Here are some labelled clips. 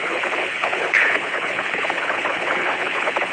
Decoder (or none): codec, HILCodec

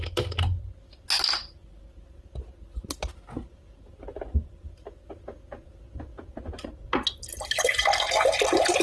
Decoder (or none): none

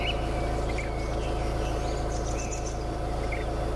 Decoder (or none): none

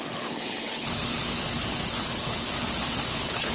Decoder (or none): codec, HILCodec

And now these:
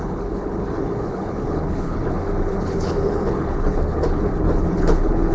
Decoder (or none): codec, HILCodec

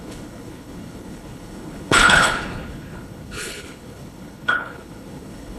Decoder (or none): codec, HILCodec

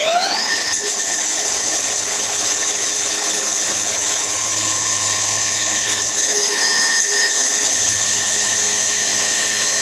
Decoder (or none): codec, HILCodec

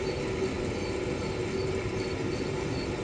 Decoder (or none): none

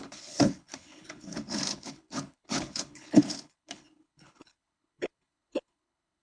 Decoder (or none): codec, HILCodec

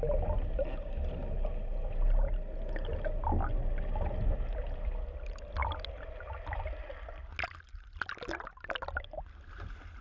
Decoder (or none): none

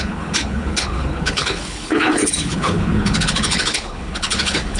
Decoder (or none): codec, HILCodec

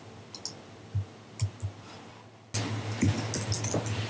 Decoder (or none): none